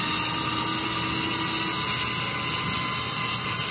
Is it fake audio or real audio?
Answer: real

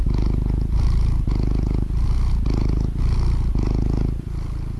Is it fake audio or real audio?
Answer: real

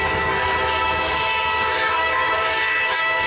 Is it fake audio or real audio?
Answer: fake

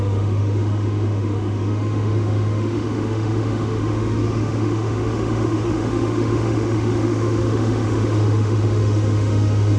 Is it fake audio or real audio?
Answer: fake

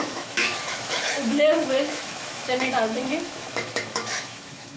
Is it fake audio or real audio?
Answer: fake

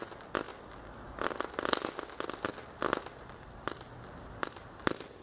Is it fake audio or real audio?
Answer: real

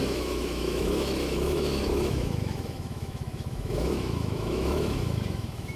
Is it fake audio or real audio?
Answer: fake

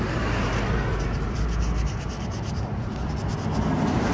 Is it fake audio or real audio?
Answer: real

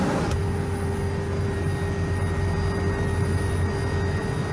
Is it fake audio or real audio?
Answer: real